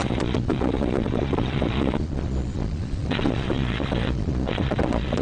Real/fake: fake